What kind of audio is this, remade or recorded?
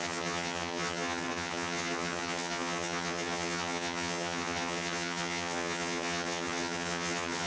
remade